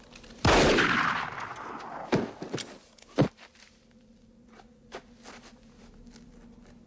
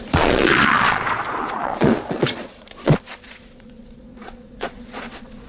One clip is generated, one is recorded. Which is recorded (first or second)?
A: first